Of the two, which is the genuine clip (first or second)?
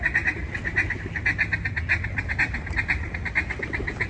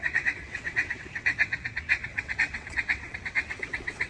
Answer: first